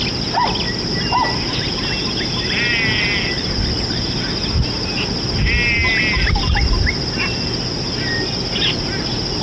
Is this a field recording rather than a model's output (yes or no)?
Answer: yes